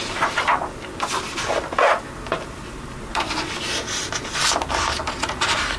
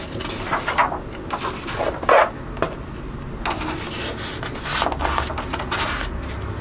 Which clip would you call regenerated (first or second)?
first